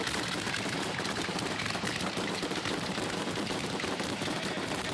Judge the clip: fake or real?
fake